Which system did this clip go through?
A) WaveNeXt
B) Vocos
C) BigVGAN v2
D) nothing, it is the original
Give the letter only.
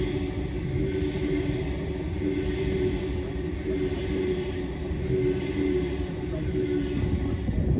D